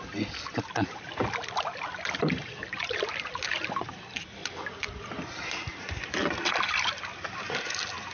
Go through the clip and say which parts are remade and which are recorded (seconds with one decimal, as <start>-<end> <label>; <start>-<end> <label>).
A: 0.0-8.1 recorded